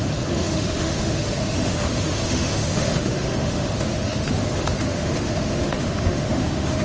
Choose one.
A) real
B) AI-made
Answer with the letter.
B